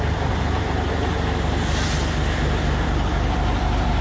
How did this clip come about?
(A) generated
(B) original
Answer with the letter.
B